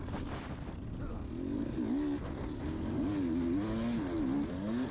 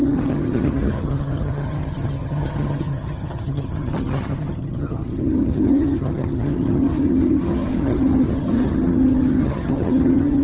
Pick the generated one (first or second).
second